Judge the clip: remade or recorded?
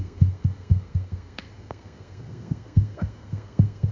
remade